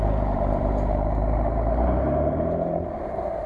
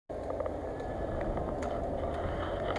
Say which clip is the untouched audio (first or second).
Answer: second